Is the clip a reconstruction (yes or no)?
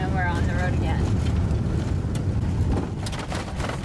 no